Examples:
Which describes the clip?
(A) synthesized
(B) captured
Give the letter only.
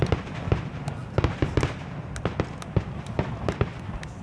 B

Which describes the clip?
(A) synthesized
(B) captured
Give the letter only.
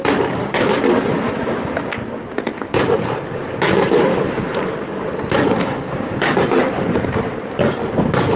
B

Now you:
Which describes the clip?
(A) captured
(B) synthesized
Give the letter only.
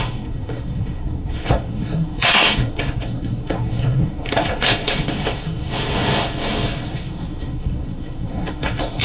B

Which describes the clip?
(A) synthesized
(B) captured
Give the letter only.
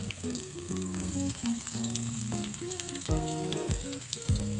A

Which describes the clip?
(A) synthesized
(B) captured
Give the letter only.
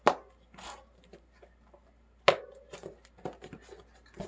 B